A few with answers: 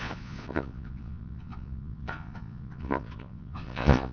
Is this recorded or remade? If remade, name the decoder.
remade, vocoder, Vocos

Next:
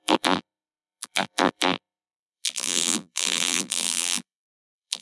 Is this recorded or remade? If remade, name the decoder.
remade, vocoder, BigVGAN v2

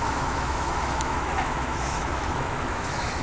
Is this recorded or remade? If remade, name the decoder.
remade, autoencoder, DAC-VAE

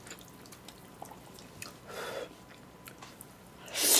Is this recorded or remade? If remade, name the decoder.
recorded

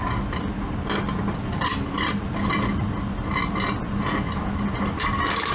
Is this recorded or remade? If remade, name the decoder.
recorded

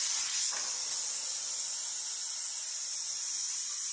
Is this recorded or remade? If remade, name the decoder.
recorded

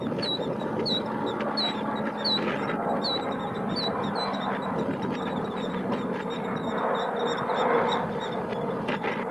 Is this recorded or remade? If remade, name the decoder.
recorded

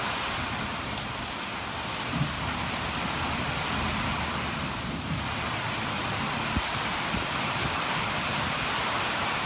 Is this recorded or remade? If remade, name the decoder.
recorded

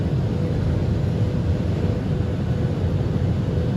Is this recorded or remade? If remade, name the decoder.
recorded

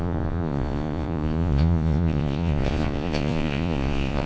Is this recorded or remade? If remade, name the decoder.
remade, vocoder, Vocos